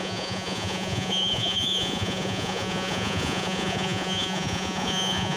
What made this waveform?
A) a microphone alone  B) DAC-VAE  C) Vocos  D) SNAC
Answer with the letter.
C